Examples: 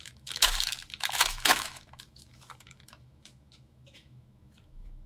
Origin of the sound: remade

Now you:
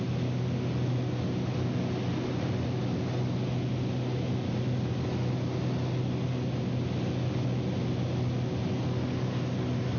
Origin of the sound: recorded